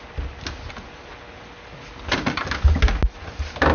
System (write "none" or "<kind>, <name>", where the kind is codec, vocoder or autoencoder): none